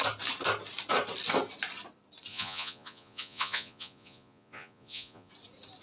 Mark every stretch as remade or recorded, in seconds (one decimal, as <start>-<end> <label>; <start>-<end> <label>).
0.0-2.3 recorded; 2.3-5.3 remade; 5.3-5.8 recorded